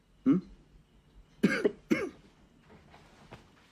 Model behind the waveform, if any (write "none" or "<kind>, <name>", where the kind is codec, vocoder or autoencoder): none